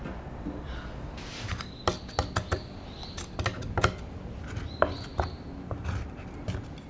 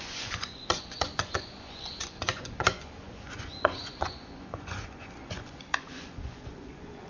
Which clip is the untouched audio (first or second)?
first